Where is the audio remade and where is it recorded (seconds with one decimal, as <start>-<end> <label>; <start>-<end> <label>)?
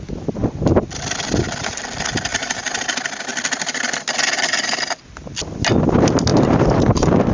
0.0-2.3 recorded; 2.3-2.8 remade; 2.8-6.3 recorded; 6.3-7.3 remade